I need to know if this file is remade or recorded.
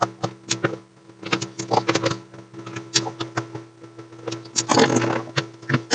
recorded